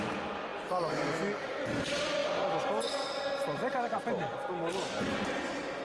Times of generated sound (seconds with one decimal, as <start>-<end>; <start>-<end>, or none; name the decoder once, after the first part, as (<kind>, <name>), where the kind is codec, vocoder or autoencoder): none